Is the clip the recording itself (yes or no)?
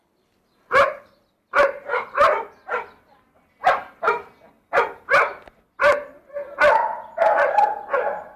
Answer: yes